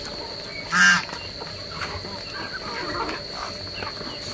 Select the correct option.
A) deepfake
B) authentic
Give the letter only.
B